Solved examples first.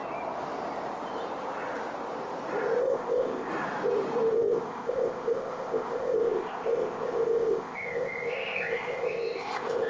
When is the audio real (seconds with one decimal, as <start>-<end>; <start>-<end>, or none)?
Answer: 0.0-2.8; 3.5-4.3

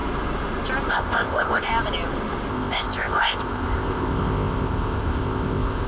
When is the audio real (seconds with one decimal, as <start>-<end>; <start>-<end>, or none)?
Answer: 0.0-0.9; 1.7-2.5

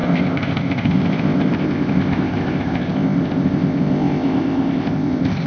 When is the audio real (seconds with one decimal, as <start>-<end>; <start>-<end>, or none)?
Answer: none